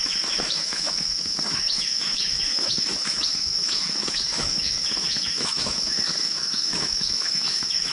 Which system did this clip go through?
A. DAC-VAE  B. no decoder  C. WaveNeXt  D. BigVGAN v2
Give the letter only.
A